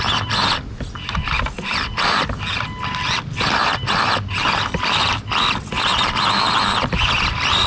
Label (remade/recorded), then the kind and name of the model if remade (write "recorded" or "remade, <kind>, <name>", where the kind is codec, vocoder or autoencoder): recorded